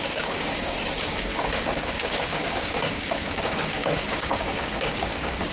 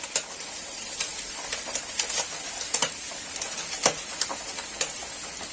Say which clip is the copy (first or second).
first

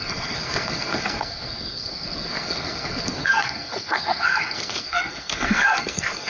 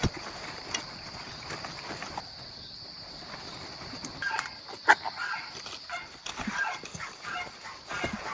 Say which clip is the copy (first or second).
first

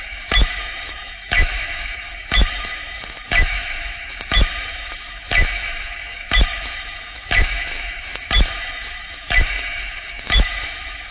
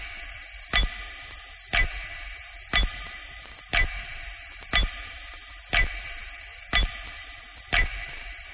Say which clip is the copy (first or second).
first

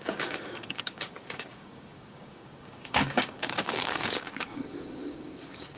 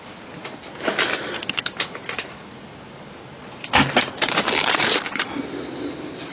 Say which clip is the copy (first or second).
first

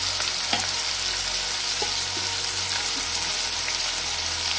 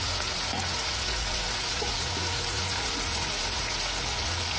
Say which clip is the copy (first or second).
second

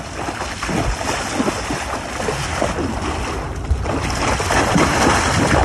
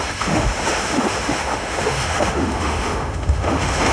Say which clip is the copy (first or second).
second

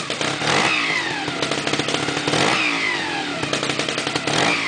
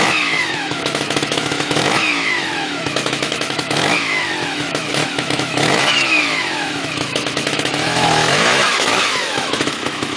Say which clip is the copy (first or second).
second